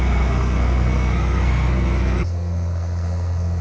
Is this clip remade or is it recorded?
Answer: remade